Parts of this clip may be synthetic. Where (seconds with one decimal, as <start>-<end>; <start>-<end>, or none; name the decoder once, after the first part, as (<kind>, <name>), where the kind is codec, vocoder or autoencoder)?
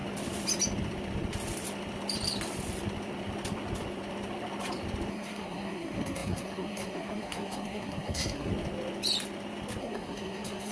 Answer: 5.1-8.5 (codec, SNAC); 9.8-10.7